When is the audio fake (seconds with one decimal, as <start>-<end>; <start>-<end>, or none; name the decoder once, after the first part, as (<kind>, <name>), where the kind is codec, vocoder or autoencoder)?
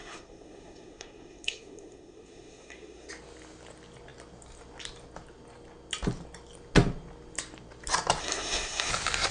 0.0-3.1 (codec, SNAC); 8.2-8.9